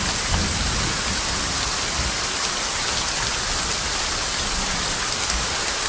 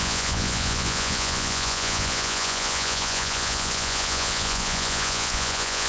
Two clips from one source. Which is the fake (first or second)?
second